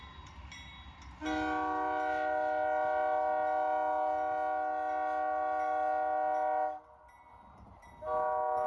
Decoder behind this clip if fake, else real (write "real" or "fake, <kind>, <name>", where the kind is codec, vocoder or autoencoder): real